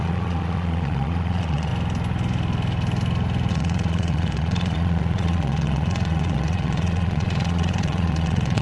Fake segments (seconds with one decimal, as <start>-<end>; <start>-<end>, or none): 0.0-1.7; 3.5-8.6